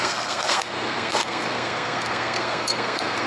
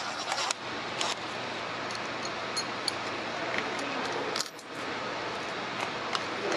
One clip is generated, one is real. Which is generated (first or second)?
first